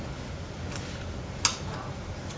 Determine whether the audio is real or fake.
real